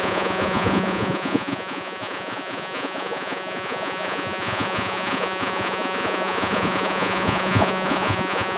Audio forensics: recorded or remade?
remade